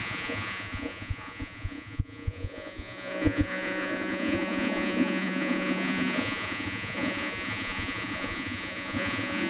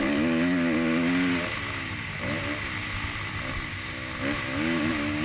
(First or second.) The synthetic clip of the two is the first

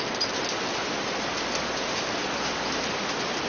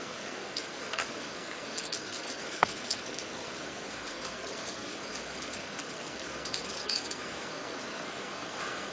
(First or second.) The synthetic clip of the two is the second